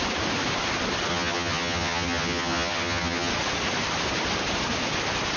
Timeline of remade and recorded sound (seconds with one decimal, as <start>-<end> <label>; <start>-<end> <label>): 0.0-1.1 recorded; 1.1-3.3 remade; 3.3-5.4 recorded